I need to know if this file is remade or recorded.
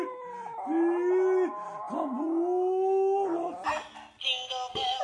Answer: recorded